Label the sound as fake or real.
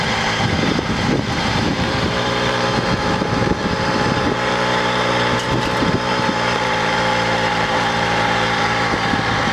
fake